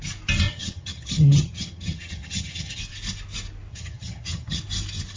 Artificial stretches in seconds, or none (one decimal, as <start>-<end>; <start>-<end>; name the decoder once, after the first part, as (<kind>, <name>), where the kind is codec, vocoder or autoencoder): 0.5-2.8 (vocoder, HiFi-GAN); 3.7-4.6